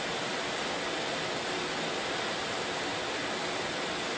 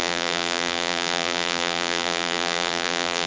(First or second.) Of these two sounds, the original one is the first